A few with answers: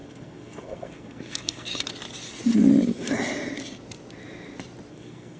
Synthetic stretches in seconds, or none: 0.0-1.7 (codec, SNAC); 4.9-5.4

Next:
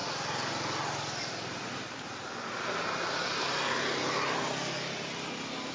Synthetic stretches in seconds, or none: none

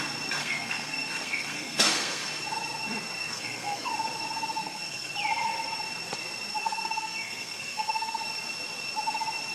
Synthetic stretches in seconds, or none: 0.4-2.4 (codec, SNAC); 3.2-3.9; 4.6-5.1; 6.6-8.2

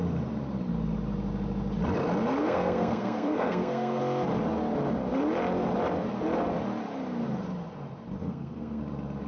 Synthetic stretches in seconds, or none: 2.4-4.0 (codec, SNAC); 8.2-8.8

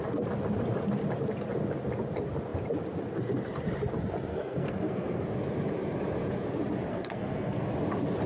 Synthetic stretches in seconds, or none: 4.3-5.2 (codec, SNAC); 6.9-7.6

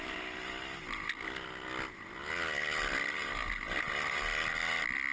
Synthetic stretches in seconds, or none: none

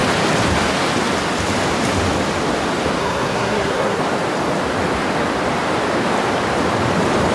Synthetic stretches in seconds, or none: 3.0-4.0 (codec, SNAC)